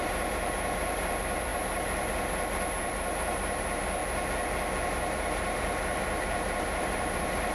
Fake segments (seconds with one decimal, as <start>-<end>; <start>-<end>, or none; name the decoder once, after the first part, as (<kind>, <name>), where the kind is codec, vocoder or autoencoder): 0.0-4.0 (vocoder, BigVGAN v2); 4.9-7.5